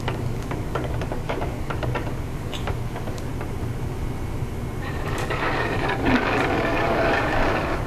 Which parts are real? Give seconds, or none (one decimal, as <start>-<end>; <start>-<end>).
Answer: 3.3-4.8